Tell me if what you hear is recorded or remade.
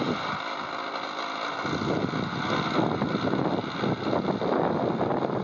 recorded